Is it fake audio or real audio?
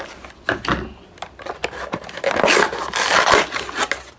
real